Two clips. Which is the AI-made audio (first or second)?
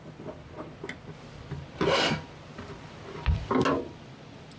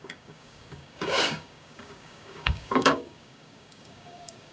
second